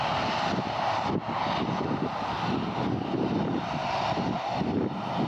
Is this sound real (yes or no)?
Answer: yes